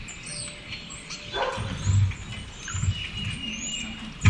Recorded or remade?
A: recorded